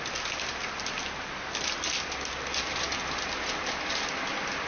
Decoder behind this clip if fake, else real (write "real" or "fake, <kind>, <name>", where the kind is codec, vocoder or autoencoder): real